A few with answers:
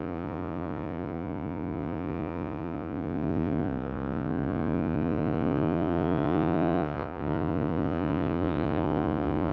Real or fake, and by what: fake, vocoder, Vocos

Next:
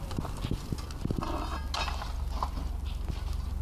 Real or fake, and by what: real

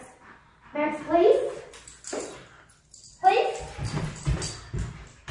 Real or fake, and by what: real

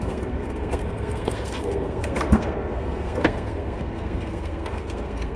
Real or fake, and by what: fake, codec, SNAC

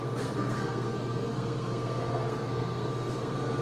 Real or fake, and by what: fake, codec, SNAC